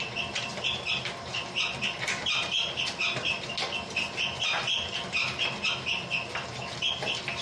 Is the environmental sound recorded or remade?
recorded